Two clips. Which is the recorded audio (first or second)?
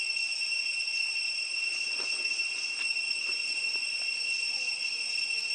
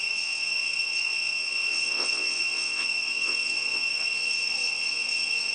first